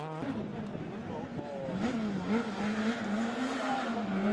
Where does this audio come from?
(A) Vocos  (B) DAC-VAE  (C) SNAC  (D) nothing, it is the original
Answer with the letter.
D